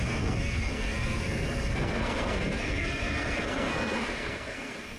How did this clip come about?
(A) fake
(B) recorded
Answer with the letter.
A